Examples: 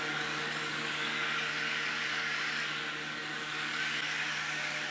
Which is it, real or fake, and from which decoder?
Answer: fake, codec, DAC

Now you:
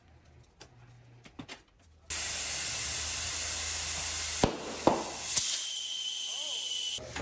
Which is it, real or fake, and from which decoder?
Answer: real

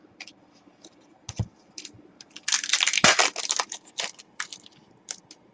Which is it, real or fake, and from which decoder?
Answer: real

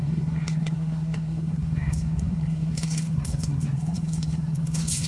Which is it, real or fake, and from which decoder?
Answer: fake, codec, SNAC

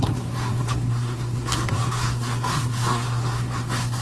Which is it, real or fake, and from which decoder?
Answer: fake, codec, SNAC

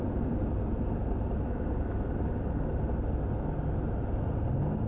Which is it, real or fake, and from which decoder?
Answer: real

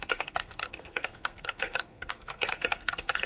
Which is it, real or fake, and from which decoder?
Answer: fake, codec, SNAC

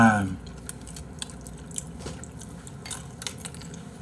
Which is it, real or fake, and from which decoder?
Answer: real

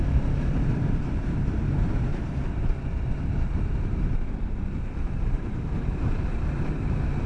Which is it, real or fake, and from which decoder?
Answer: fake, vocoder, BigVGAN v2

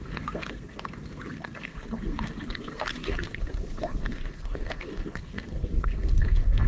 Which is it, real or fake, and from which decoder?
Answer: fake, codec, SNAC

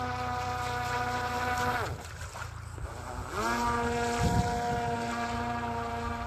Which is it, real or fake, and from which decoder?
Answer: real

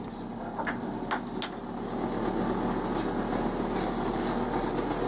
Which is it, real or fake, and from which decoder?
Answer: real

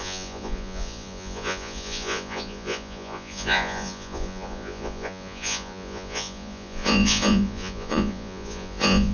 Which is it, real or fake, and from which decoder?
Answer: fake, vocoder, Vocos